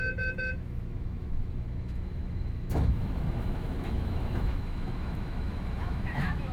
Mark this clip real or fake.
fake